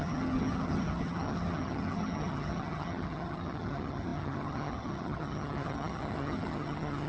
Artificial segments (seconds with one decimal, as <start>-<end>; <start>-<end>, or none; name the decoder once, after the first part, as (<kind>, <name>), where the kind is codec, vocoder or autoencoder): 0.0-7.1 (vocoder, HiFi-GAN)